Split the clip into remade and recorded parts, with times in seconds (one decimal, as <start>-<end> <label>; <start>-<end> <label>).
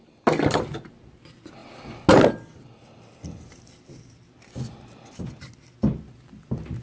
0.0-6.8 recorded